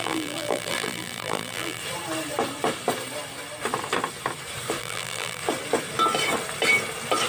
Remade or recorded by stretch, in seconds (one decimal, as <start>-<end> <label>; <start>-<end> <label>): 0.0-1.8 remade; 1.8-4.8 recorded; 4.8-5.4 remade; 5.4-7.3 recorded